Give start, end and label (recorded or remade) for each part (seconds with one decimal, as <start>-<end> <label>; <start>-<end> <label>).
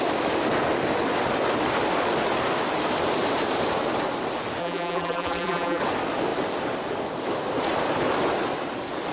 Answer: 0.0-4.6 recorded; 4.6-5.8 remade; 5.8-9.1 recorded